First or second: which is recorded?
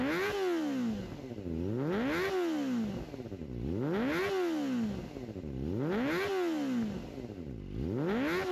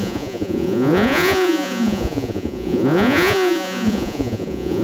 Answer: first